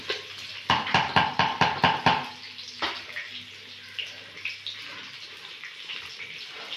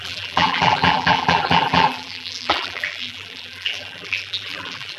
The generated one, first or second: second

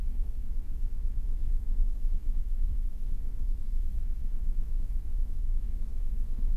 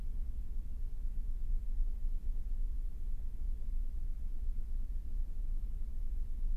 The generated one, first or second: first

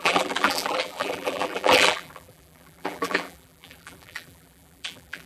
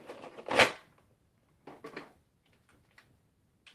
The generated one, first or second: first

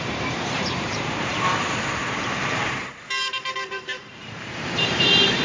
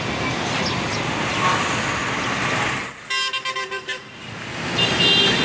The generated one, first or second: first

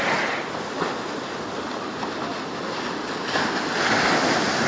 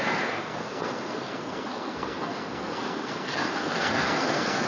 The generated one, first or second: second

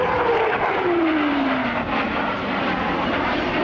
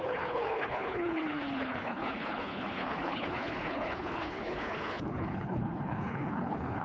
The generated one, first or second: second